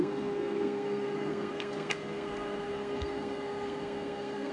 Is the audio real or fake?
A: fake